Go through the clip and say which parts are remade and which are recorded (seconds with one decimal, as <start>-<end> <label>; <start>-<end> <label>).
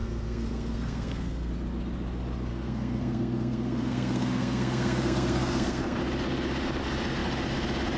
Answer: 0.0-1.5 remade; 1.5-2.5 recorded; 2.5-6.0 remade; 6.0-8.0 recorded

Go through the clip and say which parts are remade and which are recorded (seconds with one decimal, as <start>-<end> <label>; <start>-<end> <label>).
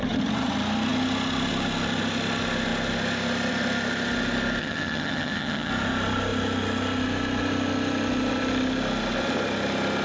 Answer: 0.0-4.6 recorded; 4.6-5.7 remade; 5.7-10.0 recorded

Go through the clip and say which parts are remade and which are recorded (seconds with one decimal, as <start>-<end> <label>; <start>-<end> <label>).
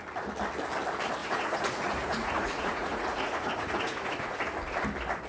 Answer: 0.0-1.2 recorded; 1.2-4.4 remade; 4.4-5.3 recorded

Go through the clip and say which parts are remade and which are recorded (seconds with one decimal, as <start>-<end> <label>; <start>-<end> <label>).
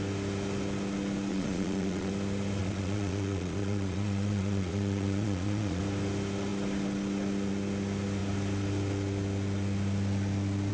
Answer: 0.0-1.3 recorded; 1.3-2.1 remade; 2.1-2.6 recorded; 2.6-5.8 remade; 5.8-10.7 recorded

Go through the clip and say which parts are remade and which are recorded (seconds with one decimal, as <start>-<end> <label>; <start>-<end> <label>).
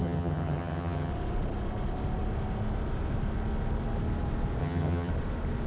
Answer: 0.0-1.1 remade; 1.1-4.6 recorded; 4.6-5.1 remade; 5.1-5.7 recorded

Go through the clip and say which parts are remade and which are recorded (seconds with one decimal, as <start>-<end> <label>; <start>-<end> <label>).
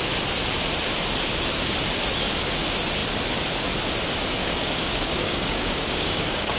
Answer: 0.0-4.4 recorded; 4.4-6.6 remade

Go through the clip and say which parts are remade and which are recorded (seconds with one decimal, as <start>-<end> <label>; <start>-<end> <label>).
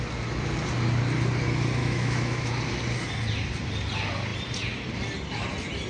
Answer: 0.0-1.8 recorded; 1.8-2.5 remade; 2.5-5.9 recorded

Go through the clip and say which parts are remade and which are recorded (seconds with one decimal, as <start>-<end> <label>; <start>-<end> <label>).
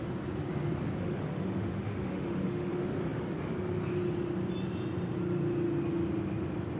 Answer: 0.0-1.0 recorded; 1.0-2.7 remade; 2.7-6.8 recorded